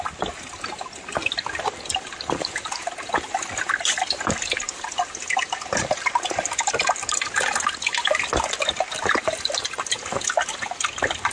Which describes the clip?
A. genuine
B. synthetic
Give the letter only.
A